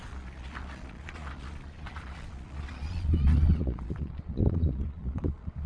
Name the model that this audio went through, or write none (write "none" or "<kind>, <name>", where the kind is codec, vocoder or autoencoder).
vocoder, Vocos